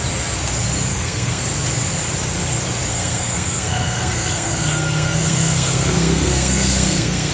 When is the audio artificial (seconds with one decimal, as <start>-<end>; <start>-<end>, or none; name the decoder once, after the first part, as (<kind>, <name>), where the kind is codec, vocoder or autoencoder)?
0.9-1.4 (codec, SNAC); 2.9-7.3